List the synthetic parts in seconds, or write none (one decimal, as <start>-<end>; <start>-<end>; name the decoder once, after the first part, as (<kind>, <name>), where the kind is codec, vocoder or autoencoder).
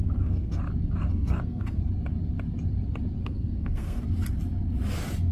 0.0-0.6 (codec, SNAC); 1.1-1.8; 3.2-4.0